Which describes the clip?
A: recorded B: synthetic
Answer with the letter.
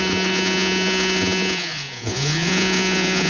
B